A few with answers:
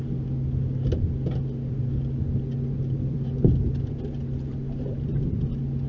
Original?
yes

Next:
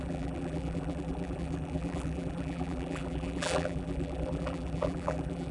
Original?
no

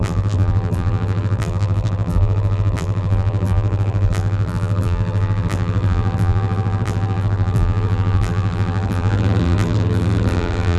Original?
no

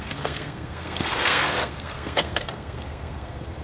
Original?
no